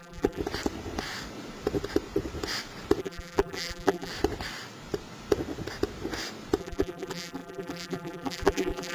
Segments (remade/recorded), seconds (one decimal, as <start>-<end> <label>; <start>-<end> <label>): 0.0-0.4 remade; 0.4-3.0 recorded; 3.0-4.1 remade; 4.1-6.6 recorded; 6.6-8.9 remade